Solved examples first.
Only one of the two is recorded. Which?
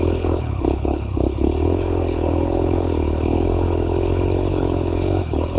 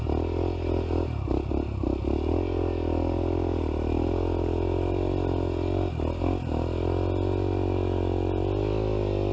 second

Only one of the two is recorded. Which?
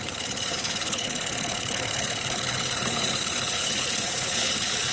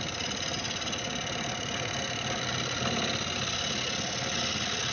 second